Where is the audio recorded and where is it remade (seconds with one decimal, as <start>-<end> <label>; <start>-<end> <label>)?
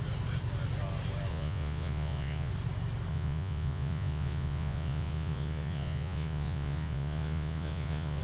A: 0.0-1.3 recorded; 1.3-2.5 remade; 2.5-3.1 recorded; 3.1-8.2 remade